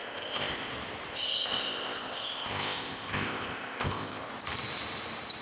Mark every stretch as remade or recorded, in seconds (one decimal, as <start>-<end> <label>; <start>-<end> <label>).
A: 0.0-0.7 remade; 0.7-1.1 recorded; 1.1-4.3 remade; 4.3-5.4 recorded